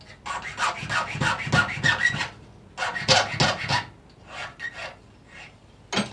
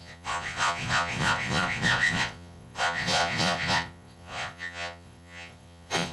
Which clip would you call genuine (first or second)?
first